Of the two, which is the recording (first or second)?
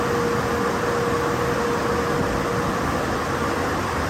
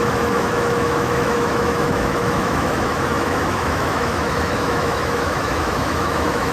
first